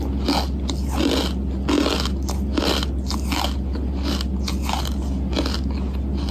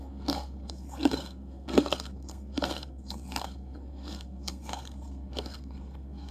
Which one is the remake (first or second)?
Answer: second